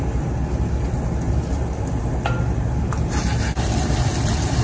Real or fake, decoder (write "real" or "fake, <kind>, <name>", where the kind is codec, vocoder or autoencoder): real